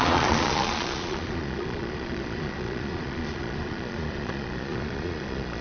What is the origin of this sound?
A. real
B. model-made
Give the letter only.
B